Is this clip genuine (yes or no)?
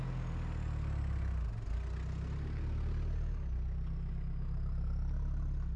yes